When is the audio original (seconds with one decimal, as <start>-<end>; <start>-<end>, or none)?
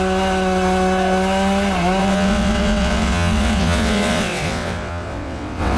0.0-2.0